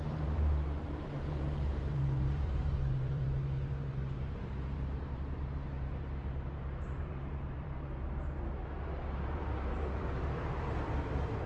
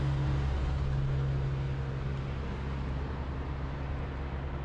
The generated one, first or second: first